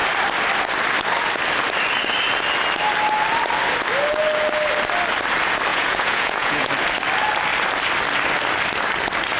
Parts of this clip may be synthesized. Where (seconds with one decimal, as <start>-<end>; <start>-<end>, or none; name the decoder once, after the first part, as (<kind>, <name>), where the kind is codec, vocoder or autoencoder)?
5.7-6.7 (vocoder, Vocos)